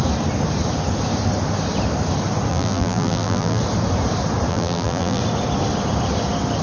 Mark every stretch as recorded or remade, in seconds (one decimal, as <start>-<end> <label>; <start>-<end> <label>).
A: 0.0-2.5 recorded; 2.5-3.6 remade; 3.6-4.5 recorded; 4.5-5.2 remade; 5.2-6.6 recorded